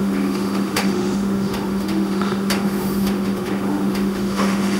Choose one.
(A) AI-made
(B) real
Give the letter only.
A